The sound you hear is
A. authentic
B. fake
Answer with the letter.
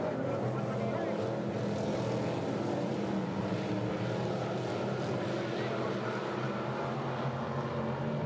A